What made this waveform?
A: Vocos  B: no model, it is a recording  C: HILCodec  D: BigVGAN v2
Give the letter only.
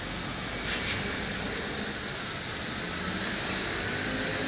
B